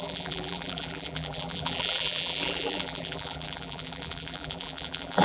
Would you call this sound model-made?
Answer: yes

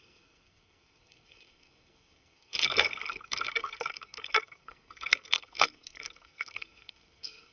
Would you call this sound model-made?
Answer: yes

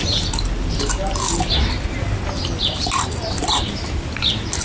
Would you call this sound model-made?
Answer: no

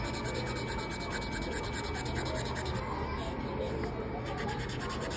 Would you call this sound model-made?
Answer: no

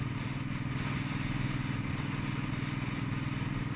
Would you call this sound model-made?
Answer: no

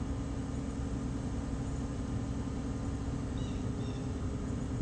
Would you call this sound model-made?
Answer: no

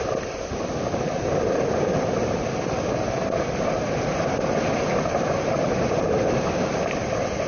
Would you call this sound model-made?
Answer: no